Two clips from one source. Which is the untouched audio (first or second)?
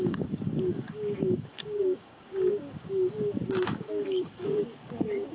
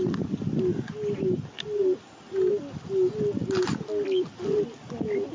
second